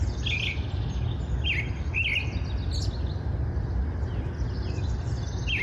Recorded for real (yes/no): yes